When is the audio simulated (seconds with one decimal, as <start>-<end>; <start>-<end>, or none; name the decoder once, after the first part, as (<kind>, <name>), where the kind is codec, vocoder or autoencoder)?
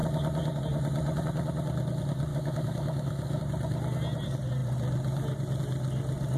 2.3-3.4 (autoencoder, DAC-VAE)